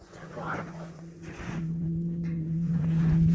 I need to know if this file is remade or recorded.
remade